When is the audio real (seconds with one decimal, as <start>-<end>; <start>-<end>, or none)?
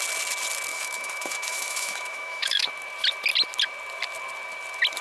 0.0-0.7; 2.7-5.0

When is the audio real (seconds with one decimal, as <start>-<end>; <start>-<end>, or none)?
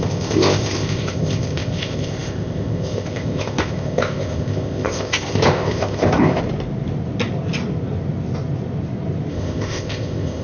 6.4-9.3